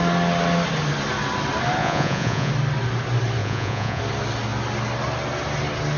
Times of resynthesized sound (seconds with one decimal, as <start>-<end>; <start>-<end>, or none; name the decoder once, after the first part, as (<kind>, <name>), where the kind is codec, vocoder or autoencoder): 1.8-2.5 (vocoder, Vocos); 3.4-4.0